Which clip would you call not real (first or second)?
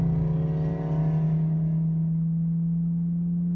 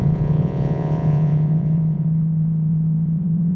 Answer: second